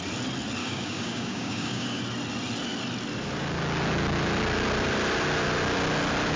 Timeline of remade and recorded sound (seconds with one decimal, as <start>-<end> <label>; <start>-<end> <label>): 0.0-0.6 recorded; 0.6-2.0 remade; 2.0-6.4 recorded